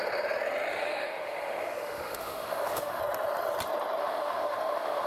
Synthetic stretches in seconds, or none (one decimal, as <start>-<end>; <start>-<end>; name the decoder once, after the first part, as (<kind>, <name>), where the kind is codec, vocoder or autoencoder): 0.7-3.0 (autoencoder, DAC-VAE); 4.0-5.1